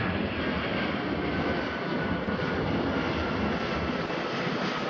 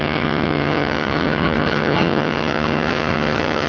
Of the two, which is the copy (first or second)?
second